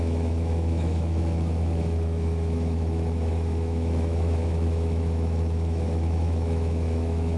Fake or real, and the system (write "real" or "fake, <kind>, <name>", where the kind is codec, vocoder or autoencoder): fake, autoencoder, DAC-VAE